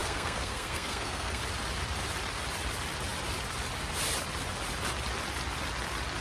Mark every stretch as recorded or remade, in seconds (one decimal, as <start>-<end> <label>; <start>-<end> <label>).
0.0-1.4 remade; 1.4-6.2 recorded